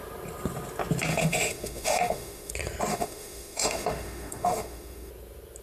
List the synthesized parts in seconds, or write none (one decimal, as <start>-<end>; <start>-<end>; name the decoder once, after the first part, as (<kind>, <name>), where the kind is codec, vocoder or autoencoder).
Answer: 1.1-2.5 (autoencoder, DAC-VAE); 2.9-5.1